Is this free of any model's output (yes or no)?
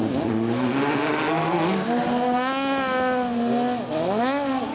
yes